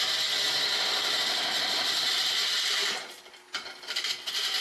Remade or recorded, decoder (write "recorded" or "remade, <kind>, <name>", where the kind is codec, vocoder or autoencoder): recorded